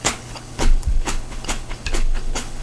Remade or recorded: remade